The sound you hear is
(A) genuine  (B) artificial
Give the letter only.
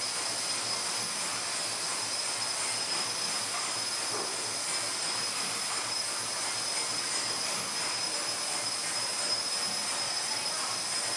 A